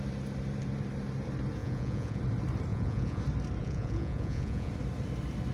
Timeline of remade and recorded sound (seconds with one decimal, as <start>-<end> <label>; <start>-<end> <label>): 0.0-1.6 recorded; 1.6-2.2 remade; 2.2-2.7 recorded; 2.7-3.2 remade; 3.2-3.6 recorded; 3.6-4.7 remade; 4.7-5.5 recorded